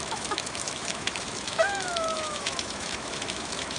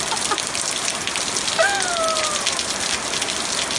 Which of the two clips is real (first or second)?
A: second